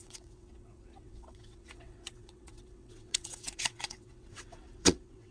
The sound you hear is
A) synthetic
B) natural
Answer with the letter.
A